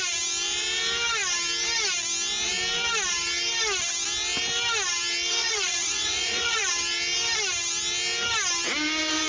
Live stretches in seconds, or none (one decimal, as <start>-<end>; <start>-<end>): 0.0-5.4; 6.7-9.3